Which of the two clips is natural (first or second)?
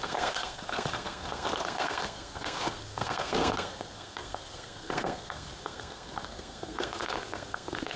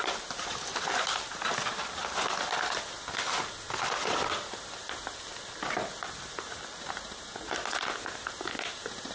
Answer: second